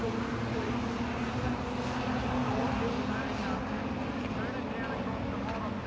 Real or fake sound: real